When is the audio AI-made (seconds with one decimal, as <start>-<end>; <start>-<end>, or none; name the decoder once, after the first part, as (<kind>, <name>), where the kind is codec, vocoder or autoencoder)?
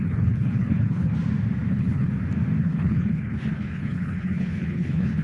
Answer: 0.0-1.1 (codec, HILCodec); 1.7-2.1; 2.6-5.2